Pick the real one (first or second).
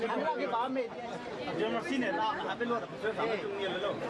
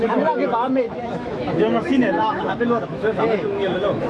first